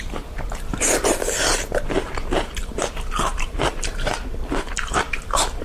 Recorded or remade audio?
remade